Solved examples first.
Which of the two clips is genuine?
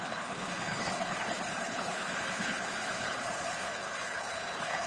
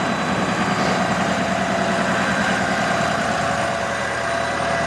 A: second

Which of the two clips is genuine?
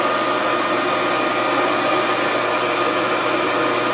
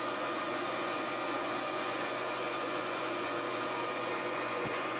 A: first